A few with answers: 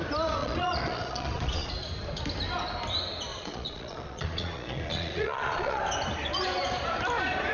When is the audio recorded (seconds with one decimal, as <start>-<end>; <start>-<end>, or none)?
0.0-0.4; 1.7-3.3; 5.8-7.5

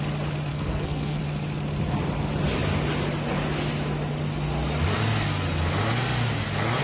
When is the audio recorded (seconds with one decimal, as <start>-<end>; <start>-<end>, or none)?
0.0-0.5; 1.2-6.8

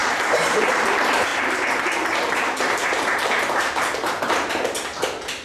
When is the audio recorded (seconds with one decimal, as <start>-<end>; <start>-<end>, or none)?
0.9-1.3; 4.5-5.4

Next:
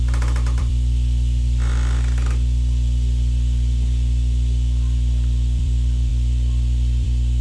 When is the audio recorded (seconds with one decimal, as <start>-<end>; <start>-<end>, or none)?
none